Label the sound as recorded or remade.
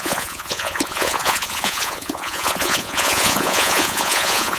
remade